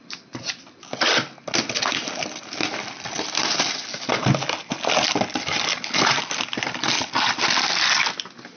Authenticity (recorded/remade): recorded